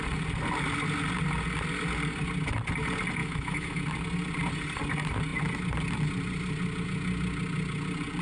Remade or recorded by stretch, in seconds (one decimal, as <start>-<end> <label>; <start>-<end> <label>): 0.0-3.2 recorded; 3.2-3.8 remade; 3.8-8.2 recorded